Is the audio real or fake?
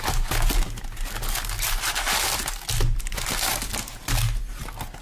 real